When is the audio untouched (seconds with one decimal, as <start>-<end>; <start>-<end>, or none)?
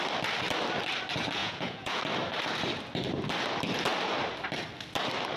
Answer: 0.0-1.4; 2.0-5.4